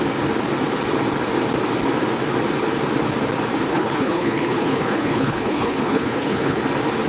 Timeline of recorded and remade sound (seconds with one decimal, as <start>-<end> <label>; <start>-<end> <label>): 0.0-3.7 recorded; 3.7-6.6 remade; 6.6-7.1 recorded